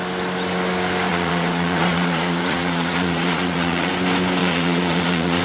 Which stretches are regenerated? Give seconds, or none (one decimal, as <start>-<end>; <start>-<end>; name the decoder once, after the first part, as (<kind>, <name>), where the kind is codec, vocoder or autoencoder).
1.1-3.9 (vocoder, Vocos); 4.4-5.4